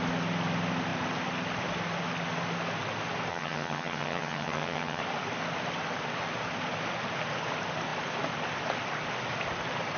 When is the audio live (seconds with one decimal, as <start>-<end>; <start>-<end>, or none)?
0.0-3.3; 5.0-10.0